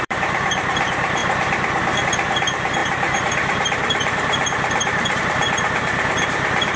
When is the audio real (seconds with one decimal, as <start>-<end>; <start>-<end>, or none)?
1.2-2.0